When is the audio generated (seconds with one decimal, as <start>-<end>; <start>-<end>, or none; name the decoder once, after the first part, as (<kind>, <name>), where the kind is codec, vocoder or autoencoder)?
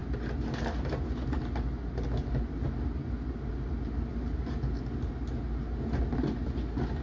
none